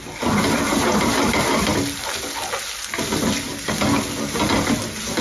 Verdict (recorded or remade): recorded